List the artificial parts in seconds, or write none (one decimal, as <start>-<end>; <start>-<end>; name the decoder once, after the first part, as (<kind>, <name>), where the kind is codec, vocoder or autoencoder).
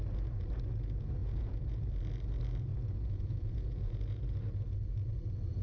1.2-1.9 (vocoder, Vocos); 2.7-4.2